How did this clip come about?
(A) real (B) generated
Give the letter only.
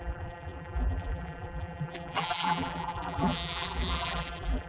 B